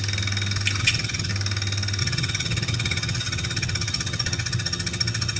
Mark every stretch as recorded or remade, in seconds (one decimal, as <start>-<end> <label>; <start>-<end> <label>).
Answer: 0.0-0.8 recorded; 0.8-1.3 remade; 1.3-2.0 recorded; 2.0-5.4 remade